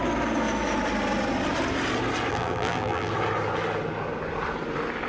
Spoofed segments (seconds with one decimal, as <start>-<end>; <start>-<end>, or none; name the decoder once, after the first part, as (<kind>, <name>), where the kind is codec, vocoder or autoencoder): 2.3-3.1 (vocoder, BigVGAN v2)